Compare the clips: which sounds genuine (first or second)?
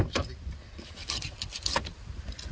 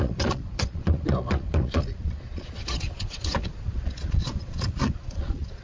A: first